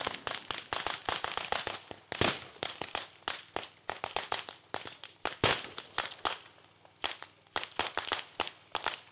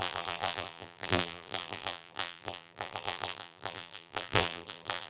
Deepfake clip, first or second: second